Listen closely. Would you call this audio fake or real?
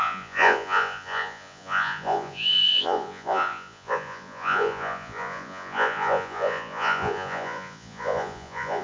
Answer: fake